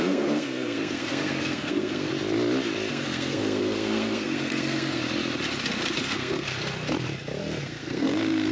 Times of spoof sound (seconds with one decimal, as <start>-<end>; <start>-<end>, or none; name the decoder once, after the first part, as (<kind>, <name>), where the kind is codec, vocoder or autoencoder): 0.0-2.1 (codec, SNAC); 2.9-5.0; 6.0-6.5; 7.4-8.5

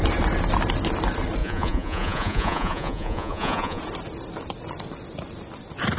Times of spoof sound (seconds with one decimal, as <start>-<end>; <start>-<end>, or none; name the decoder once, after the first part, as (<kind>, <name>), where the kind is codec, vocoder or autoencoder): 1.4-3.8 (vocoder, Vocos)

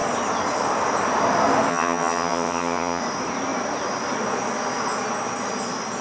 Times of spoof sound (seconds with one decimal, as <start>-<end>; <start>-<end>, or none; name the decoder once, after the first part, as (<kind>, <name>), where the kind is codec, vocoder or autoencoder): 1.7-3.0 (vocoder, HiFi-GAN)

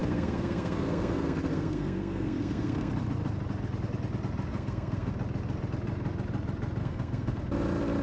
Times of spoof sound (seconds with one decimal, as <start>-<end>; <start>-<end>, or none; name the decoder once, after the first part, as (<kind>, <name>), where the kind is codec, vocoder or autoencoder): 0.0-2.9 (codec, SNAC); 4.5-5.1; 6.8-7.4

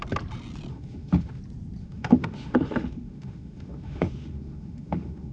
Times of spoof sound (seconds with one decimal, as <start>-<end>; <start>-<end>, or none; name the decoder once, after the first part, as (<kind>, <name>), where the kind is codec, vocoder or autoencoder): 0.7-1.4 (autoencoder, DAC-VAE); 1.8-5.3

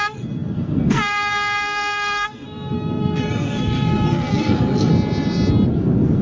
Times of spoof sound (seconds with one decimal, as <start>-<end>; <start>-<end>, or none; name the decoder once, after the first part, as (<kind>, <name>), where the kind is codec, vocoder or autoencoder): 0.0-4.9 (codec, SNAC); 5.7-6.2